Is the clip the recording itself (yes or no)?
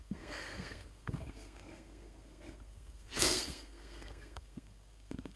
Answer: no